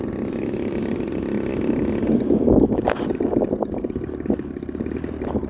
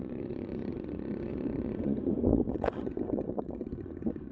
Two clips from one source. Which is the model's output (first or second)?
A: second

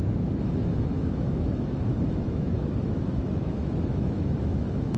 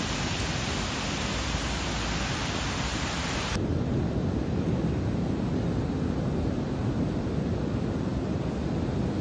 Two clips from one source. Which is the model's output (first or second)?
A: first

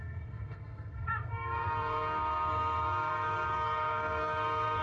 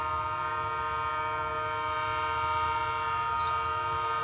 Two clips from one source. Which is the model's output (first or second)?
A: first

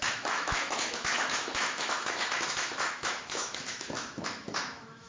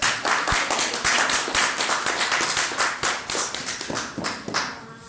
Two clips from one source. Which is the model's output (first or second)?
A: first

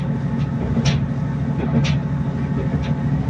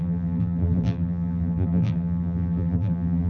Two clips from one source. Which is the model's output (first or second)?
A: second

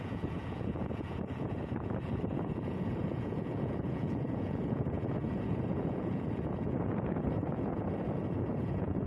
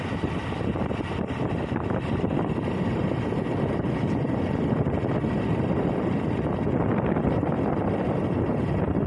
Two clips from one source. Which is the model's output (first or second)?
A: first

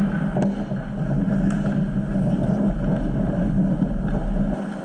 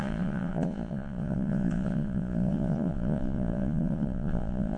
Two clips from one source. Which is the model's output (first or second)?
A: second